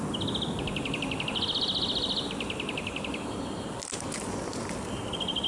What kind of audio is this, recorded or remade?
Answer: recorded